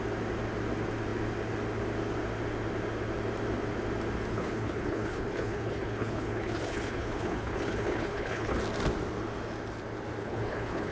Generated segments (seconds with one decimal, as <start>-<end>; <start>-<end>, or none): 4.3-8.6; 10.2-10.9